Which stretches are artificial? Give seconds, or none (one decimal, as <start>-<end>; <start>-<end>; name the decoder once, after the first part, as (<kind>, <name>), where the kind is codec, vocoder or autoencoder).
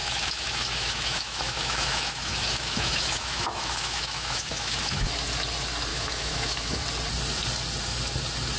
0.0-5.1 (autoencoder, DAC-VAE); 5.9-6.8